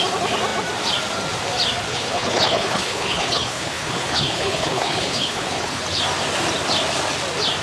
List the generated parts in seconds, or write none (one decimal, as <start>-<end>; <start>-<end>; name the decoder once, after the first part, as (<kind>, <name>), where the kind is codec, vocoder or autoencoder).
1.9-5.8 (codec, HILCodec)